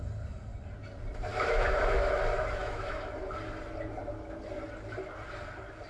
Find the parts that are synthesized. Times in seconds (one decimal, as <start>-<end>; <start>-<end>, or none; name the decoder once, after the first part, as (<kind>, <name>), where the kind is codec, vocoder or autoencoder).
1.3-2.1 (autoencoder, DAC-VAE); 2.6-3.1